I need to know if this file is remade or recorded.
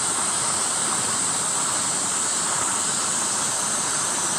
recorded